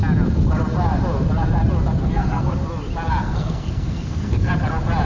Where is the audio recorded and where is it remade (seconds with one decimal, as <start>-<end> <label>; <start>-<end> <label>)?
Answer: 0.0-2.0 recorded; 2.0-2.5 remade; 2.5-3.2 recorded; 3.2-4.5 remade; 4.5-5.0 recorded